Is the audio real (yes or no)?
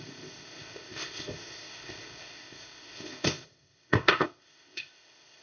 no